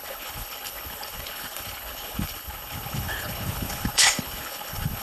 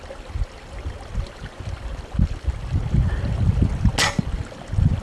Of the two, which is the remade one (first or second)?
first